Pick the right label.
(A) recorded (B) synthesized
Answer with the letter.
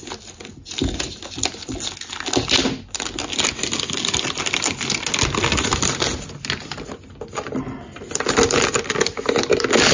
A